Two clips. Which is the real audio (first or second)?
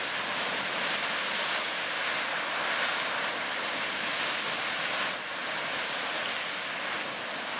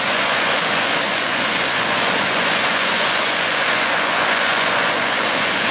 first